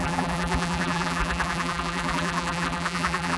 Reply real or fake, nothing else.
fake